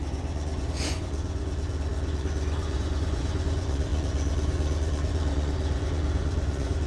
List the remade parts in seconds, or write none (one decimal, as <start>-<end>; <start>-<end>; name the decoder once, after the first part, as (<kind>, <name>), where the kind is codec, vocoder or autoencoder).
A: 0.0-6.9 (vocoder, Vocos)